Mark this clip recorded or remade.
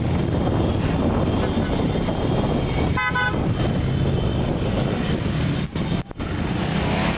recorded